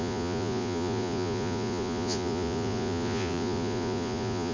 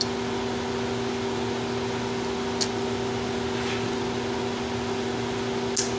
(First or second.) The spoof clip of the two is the first